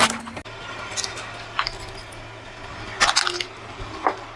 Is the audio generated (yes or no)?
no